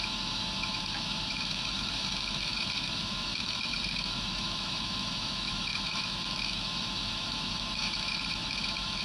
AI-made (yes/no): yes